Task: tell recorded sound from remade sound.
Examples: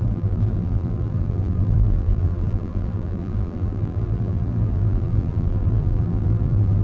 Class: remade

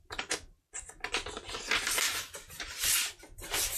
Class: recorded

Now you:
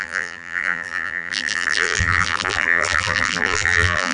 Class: remade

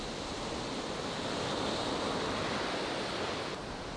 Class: recorded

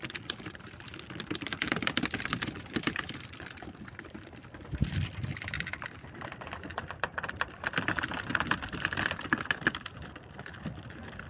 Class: remade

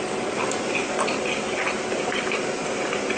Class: recorded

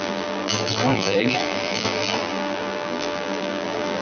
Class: remade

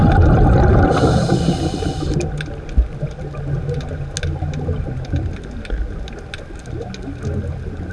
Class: recorded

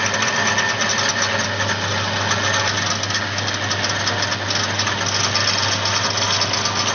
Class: recorded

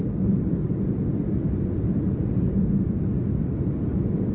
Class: recorded